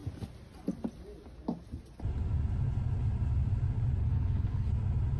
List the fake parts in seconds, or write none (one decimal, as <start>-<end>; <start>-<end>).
4.0-4.7